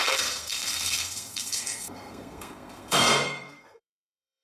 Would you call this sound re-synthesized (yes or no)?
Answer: yes